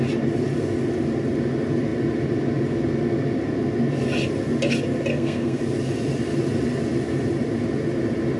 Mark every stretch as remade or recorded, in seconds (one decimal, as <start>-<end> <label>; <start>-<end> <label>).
0.0-5.1 recorded; 5.1-5.6 remade; 5.6-8.4 recorded